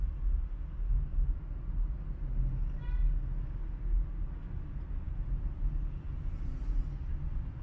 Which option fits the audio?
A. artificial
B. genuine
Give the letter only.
B